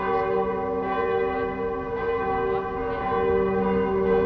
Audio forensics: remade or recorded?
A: recorded